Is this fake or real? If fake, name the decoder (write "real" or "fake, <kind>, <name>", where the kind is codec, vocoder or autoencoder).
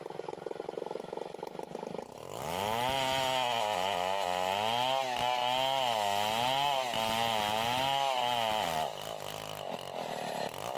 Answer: real